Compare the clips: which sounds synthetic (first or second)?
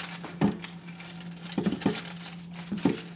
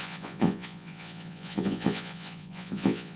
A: second